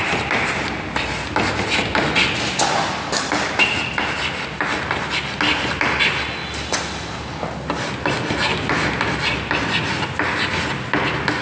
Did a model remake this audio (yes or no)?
no